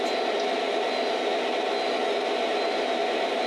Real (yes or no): yes